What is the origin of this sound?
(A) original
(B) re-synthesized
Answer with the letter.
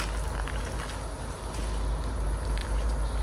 A